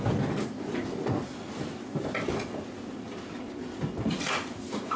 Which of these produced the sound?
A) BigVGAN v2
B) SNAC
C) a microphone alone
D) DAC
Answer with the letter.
C